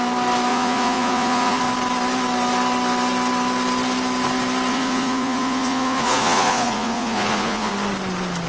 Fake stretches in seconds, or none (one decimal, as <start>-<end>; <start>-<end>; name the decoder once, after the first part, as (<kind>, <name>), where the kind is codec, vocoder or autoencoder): 0.5-1.6 (vocoder, Vocos); 4.7-7.7